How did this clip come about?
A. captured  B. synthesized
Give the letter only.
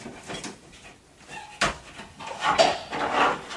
A